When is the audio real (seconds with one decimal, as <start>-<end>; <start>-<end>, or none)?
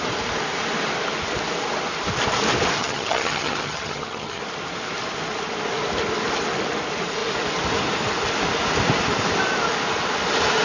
0.0-2.8; 4.4-10.6